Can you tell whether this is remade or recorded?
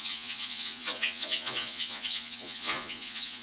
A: remade